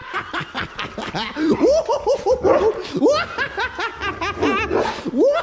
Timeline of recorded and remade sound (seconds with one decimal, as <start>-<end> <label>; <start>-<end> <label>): 0.0-3.0 remade; 3.0-5.4 recorded